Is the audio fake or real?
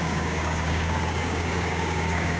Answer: fake